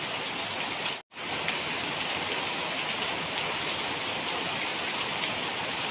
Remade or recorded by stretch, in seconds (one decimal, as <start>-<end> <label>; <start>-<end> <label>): 0.0-5.9 recorded